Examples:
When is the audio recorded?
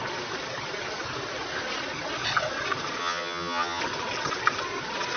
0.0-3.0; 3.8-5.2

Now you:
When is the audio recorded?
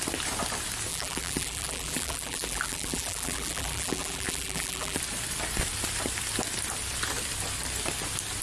0.0-0.9; 5.0-8.4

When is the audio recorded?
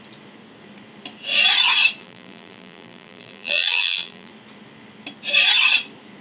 0.0-2.0; 4.3-6.2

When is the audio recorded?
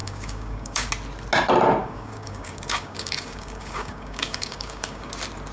0.9-1.8; 5.1-5.5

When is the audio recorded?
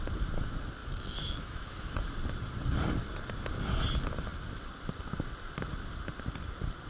0.0-0.8; 2.1-6.9